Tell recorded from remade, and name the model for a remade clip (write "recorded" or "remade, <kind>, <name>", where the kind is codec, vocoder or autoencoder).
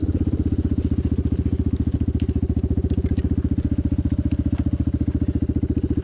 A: recorded